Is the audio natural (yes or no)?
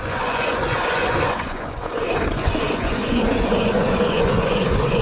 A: no